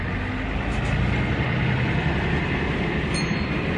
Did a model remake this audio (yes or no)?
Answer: no